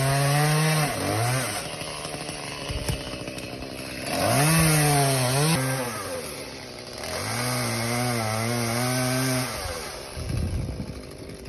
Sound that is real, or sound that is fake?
real